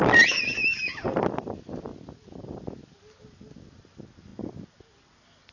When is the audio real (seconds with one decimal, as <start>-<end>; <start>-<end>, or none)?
0.0-5.5